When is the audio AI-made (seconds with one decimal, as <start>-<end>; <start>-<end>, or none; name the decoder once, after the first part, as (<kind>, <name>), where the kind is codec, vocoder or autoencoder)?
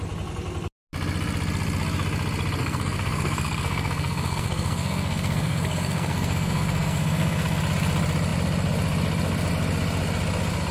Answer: 2.6-7.6 (codec, SNAC)